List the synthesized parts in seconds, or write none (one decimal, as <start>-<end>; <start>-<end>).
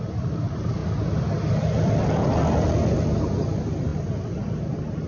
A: none